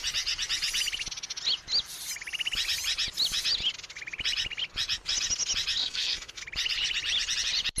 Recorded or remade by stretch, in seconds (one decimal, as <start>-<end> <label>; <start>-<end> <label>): 0.0-5.8 recorded; 5.8-6.4 remade; 6.4-7.8 recorded